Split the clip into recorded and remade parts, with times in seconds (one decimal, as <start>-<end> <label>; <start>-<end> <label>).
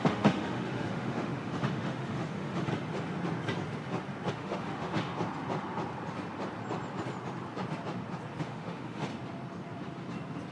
0.0-2.7 remade; 2.7-4.3 recorded; 4.3-5.1 remade; 5.1-8.4 recorded; 8.4-9.1 remade; 9.1-10.5 recorded